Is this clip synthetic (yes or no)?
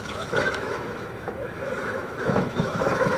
yes